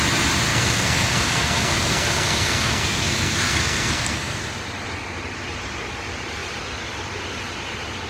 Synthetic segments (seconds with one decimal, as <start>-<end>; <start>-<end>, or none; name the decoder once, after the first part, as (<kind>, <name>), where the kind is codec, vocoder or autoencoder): 0.5-4.4 (codec, SNAC)